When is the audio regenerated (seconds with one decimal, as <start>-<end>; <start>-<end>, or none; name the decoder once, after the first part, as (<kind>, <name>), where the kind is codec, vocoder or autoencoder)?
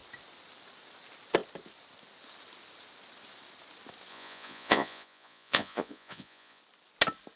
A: 4.1-6.6 (vocoder, Vocos)